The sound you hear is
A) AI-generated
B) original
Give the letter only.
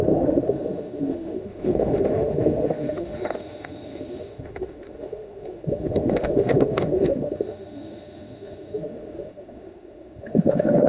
A